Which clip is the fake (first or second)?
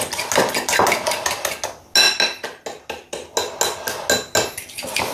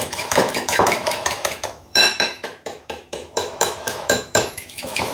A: second